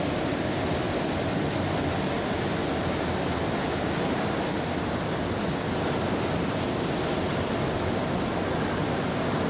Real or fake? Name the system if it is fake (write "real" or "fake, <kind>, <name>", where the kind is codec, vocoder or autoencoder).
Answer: real